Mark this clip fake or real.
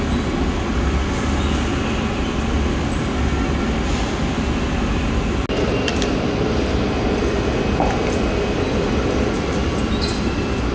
real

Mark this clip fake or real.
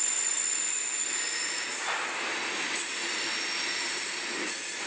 real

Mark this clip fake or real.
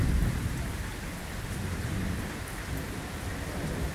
fake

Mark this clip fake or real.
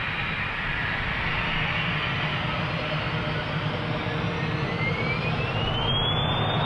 real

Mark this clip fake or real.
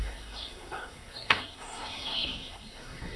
fake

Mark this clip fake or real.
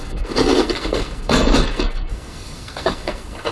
fake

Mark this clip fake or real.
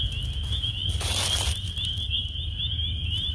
real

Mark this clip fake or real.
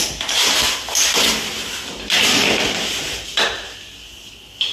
real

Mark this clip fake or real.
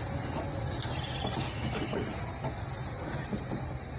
real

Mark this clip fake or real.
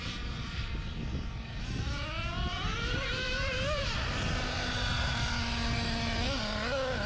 real